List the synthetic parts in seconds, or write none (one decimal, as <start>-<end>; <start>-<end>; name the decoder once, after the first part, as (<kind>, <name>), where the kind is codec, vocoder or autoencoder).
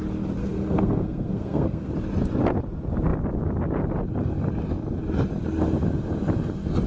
0.4-1.9 (codec, SNAC)